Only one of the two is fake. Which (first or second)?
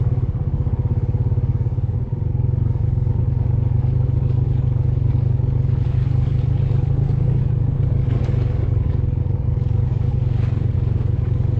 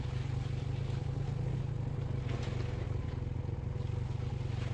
first